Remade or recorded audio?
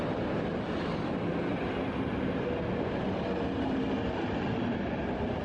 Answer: recorded